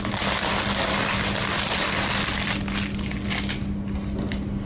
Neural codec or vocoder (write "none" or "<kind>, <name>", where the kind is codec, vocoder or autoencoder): none